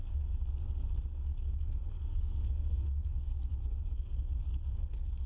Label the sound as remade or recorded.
remade